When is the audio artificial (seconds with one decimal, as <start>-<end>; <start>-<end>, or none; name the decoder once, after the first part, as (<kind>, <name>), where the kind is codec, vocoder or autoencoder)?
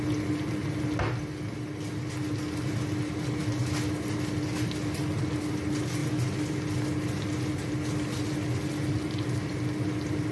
none